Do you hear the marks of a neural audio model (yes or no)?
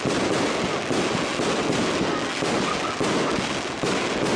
no